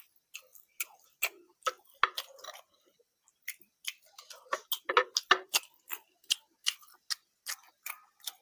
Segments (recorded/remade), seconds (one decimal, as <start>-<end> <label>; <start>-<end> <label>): 0.0-8.4 recorded